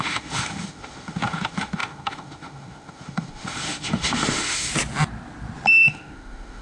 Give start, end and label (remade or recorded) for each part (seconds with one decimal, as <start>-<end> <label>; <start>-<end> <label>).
0.0-4.7 remade; 4.7-5.7 recorded; 5.7-6.6 remade